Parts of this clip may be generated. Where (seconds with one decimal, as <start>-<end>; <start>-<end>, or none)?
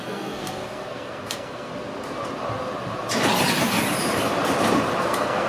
0.0-1.7; 5.0-5.5